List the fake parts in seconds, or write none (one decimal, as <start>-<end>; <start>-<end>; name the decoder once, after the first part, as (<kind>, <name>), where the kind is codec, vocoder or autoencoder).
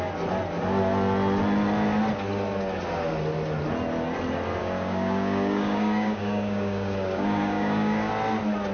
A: 4.6-8.1 (codec, DAC)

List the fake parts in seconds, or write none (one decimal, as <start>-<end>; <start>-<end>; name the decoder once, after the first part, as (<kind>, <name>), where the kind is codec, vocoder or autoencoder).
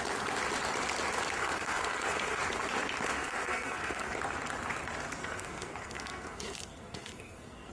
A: 1.4-2.4 (codec, SNAC); 3.1-4.1; 5.2-7.7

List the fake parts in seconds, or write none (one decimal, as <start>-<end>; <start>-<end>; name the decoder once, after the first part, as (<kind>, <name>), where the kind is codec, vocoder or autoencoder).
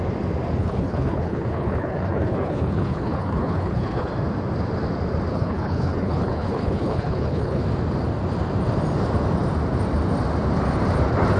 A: 0.6-4.1 (codec, HILCodec); 5.3-7.6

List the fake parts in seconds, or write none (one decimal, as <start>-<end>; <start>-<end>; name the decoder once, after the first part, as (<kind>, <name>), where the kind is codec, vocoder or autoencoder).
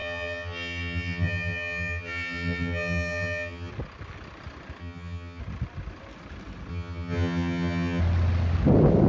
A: 0.0-3.7 (vocoder, HiFi-GAN); 4.8-5.4; 6.7-8.0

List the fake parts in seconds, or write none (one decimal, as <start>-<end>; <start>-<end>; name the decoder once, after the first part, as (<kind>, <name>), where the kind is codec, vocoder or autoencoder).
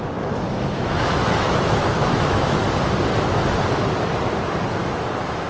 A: 0.0-2.6 (autoencoder, DAC-VAE); 4.8-5.5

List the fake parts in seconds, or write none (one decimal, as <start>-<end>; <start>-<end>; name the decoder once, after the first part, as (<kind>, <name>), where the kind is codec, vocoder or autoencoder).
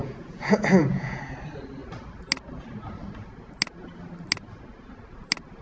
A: 0.0-1.2 (vocoder, Vocos)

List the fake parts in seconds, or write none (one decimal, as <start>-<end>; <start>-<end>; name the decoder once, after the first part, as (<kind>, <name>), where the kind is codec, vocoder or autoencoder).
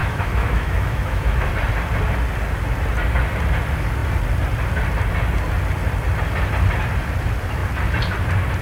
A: 0.0-1.5 (autoencoder, DAC-VAE)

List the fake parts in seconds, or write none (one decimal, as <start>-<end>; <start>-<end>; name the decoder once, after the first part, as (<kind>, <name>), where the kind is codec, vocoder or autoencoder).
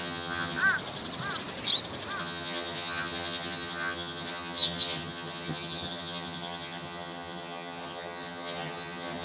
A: 0.0-0.6 (vocoder, HiFi-GAN); 2.2-9.2